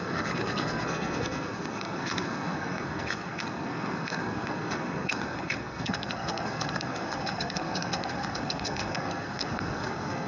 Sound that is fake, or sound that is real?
fake